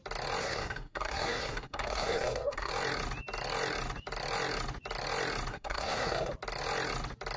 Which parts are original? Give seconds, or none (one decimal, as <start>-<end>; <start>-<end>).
0.0-0.4; 2.7-5.5; 6.3-7.4